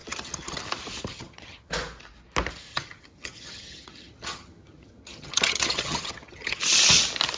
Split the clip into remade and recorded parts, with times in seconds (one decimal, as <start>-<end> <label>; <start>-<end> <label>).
0.0-0.6 remade; 0.6-1.1 recorded; 1.1-1.7 remade; 1.7-2.7 recorded; 2.7-6.6 remade; 6.6-7.4 recorded